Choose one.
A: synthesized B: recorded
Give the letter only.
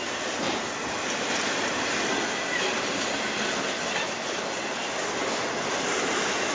B